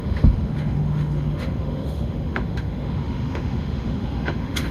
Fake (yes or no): yes